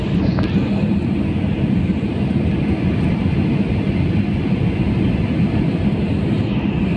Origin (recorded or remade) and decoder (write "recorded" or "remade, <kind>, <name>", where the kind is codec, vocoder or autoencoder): recorded